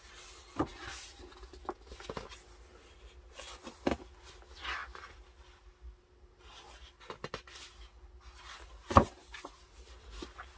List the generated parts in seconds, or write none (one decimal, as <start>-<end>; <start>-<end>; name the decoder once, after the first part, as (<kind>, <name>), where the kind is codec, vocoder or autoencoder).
none